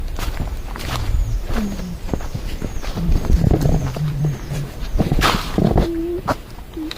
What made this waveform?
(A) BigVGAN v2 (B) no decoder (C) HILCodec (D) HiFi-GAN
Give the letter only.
A